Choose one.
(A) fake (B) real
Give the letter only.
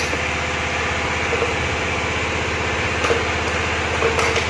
B